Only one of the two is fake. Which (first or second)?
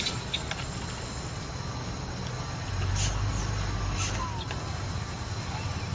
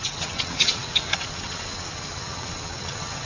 second